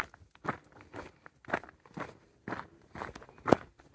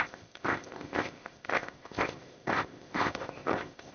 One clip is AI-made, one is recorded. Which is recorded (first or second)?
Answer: first